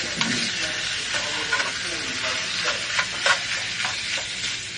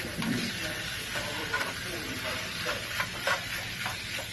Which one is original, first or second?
first